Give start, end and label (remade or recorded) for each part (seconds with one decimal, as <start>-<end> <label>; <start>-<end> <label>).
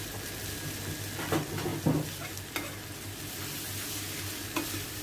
0.0-5.0 recorded